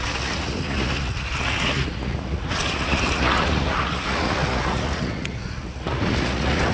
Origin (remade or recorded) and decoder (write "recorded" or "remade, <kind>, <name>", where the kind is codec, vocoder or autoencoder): remade, vocoder, Vocos